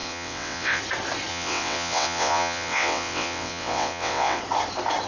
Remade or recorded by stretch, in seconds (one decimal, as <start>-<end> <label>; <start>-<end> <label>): 0.0-0.8 remade; 0.8-1.3 recorded; 1.3-4.4 remade; 4.4-5.1 recorded